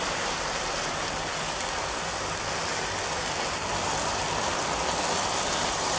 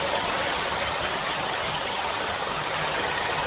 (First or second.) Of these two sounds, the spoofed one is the second